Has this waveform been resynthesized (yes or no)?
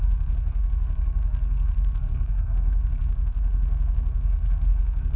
yes